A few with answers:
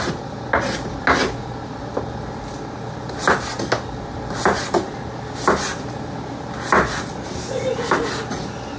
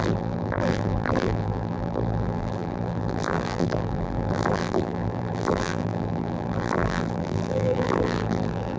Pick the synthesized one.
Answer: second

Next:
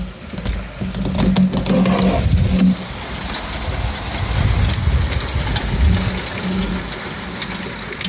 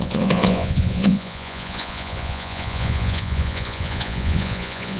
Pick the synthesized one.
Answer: second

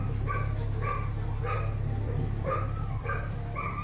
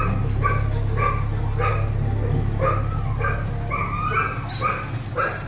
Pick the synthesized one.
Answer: first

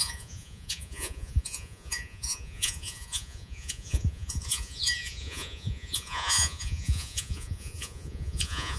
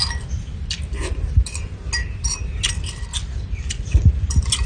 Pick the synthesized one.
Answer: first